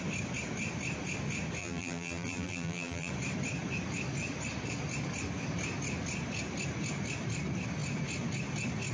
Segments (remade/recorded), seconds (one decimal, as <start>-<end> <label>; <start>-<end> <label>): 0.0-1.6 recorded; 1.6-3.1 remade; 3.1-8.9 recorded